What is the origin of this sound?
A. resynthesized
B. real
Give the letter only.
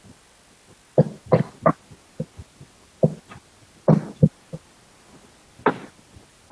B